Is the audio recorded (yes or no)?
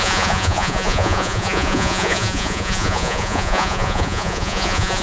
no